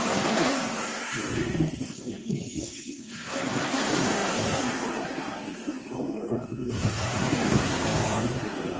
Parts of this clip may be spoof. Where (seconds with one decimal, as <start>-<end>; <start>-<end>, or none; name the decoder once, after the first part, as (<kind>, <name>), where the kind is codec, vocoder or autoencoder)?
0.0-8.8 (codec, SNAC)